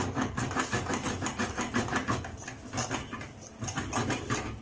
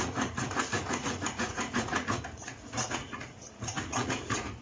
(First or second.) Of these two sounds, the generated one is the second